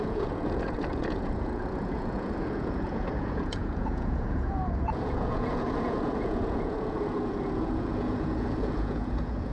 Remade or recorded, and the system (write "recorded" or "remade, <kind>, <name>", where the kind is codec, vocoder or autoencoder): remade, vocoder, Vocos